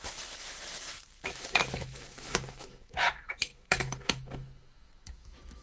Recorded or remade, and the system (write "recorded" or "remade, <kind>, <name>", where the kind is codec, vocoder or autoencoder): remade, autoencoder, DAC-VAE